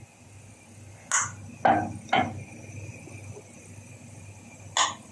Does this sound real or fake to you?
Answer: real